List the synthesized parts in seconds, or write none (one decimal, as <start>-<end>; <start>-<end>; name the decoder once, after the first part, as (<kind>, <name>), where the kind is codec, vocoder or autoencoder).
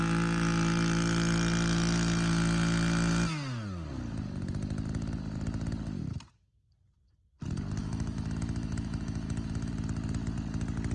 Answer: 7.8-9.7 (autoencoder, DAC-VAE)